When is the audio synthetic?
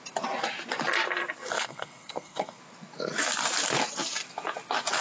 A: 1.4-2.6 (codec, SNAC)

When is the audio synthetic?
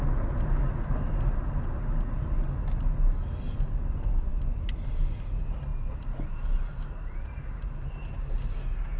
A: none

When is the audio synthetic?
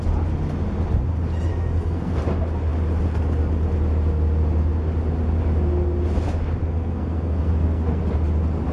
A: 1.5-2.2 (codec, SNAC); 6.6-8.0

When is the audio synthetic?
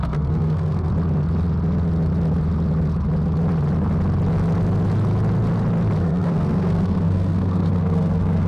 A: 0.0-0.9 (codec, SNAC); 6.0-8.5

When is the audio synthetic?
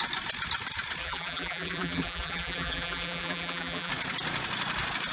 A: 1.0-3.9 (vocoder, BigVGAN v2)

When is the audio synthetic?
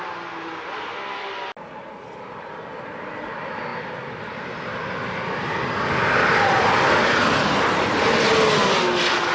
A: 3.7-4.2 (vocoder, BigVGAN v2)